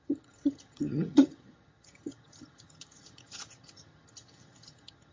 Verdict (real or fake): fake